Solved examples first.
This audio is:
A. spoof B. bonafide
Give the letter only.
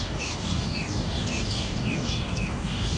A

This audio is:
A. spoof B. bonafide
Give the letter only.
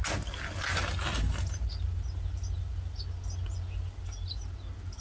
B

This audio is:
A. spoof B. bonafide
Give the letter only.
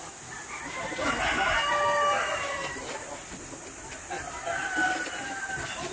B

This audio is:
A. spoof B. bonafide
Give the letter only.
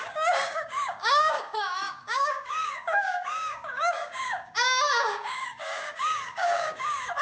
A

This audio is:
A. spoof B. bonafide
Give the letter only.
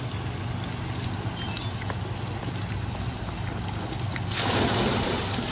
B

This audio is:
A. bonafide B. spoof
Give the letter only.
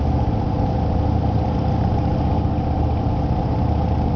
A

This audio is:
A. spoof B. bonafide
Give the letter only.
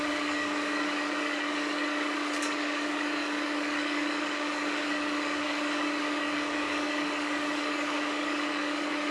A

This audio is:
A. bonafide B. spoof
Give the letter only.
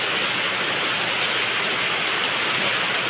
A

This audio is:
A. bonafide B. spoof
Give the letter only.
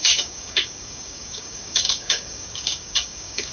B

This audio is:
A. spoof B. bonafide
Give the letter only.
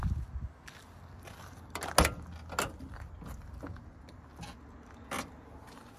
B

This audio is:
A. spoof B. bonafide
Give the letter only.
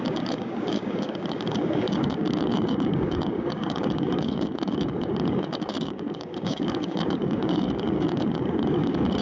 A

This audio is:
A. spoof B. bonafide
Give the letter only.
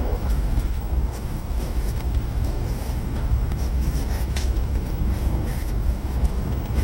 A